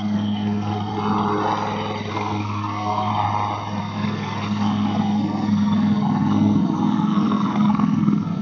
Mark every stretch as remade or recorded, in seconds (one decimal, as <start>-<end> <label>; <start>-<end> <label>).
0.0-0.9 remade; 0.9-2.1 recorded; 2.1-3.1 remade; 3.1-3.8 recorded; 3.8-8.4 remade